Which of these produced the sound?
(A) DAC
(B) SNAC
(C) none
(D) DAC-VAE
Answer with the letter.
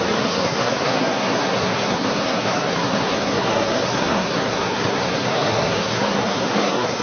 B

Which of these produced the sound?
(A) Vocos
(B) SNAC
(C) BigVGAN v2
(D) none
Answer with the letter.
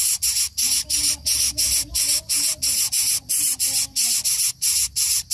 D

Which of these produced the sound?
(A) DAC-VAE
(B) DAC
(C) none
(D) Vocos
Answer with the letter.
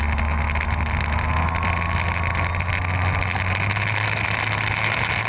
C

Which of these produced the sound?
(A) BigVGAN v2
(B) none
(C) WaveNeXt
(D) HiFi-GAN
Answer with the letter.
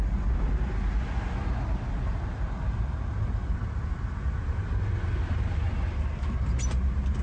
B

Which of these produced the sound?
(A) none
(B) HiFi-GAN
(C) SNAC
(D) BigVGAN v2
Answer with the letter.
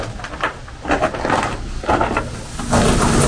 A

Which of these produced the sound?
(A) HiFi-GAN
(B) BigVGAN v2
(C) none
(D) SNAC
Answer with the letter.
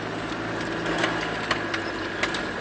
C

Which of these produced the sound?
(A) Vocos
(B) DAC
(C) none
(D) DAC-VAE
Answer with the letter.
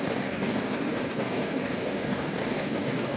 B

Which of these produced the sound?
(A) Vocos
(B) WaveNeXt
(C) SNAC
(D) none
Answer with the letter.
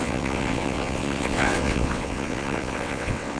B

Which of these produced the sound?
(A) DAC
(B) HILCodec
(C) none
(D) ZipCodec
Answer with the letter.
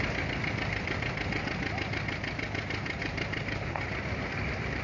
C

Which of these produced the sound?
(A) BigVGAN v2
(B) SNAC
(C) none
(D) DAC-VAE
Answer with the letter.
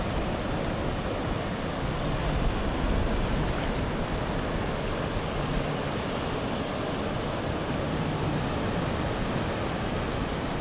C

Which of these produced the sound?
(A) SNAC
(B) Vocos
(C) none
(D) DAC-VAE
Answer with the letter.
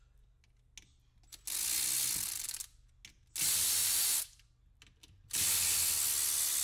C